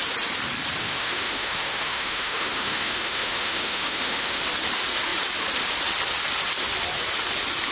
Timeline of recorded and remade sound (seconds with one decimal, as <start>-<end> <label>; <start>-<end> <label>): 0.0-0.8 recorded; 0.8-4.4 remade; 4.4-7.7 recorded